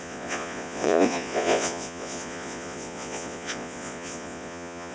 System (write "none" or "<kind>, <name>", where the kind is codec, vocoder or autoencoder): vocoder, Vocos